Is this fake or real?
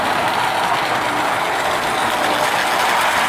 real